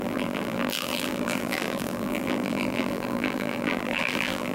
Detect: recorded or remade remade